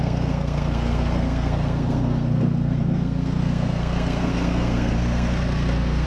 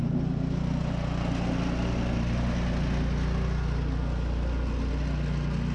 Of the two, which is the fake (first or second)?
first